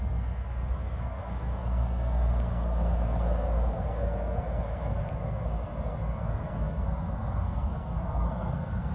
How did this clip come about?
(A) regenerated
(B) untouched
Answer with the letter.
A